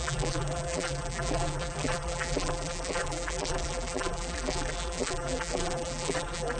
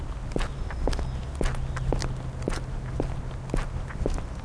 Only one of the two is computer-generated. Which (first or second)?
first